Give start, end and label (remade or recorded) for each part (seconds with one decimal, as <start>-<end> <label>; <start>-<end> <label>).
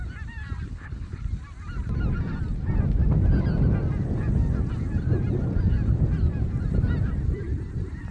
0.0-0.7 recorded; 0.7-1.2 remade; 1.2-8.1 recorded